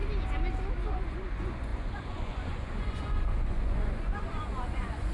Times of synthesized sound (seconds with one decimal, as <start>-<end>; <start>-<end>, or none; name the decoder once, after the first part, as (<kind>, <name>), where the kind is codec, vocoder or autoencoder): 0.9-5.1 (vocoder, Vocos)